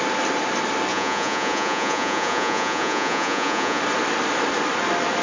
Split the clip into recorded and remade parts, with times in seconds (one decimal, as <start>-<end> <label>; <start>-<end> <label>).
0.0-0.9 recorded; 0.9-3.8 remade; 3.8-5.2 recorded